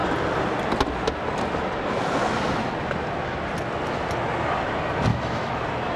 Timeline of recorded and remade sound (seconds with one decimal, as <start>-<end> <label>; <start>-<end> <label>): 0.0-5.1 recorded; 5.1-5.6 remade; 5.6-6.0 recorded